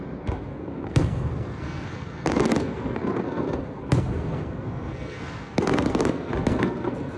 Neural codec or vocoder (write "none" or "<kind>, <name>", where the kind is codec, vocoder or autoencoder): codec, SNAC